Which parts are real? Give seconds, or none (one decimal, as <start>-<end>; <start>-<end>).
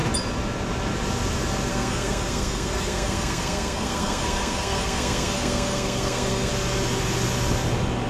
0.0-1.7; 6.5-8.1